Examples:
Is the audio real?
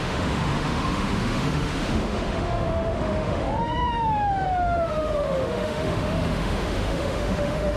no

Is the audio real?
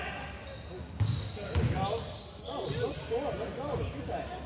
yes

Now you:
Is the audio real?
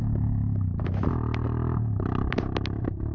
yes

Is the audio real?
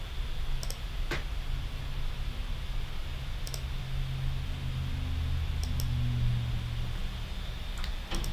yes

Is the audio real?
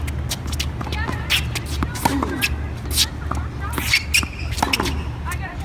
yes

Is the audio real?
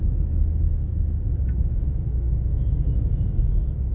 no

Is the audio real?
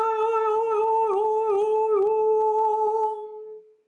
yes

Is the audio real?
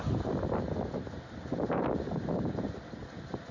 yes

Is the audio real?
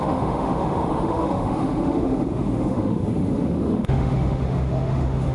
no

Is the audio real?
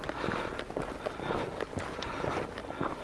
yes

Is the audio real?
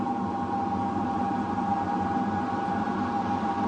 yes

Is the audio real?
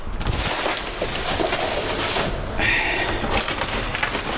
yes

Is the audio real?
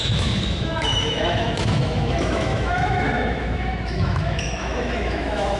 no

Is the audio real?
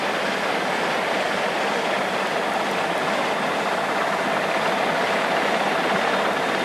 yes